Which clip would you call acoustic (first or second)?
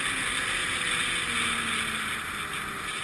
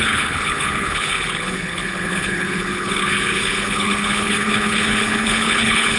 first